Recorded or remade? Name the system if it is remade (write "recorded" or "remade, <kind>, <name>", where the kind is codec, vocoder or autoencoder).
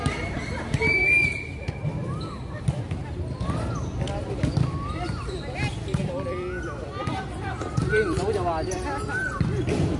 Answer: recorded